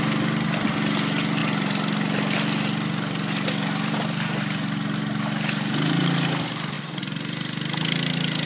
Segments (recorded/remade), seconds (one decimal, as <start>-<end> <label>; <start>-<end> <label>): 0.0-8.5 recorded